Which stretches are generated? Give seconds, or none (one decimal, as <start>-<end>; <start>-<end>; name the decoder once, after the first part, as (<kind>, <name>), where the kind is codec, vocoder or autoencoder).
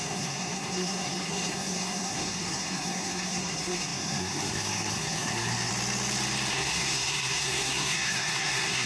0.0-5.7 (codec, SNAC); 6.5-8.9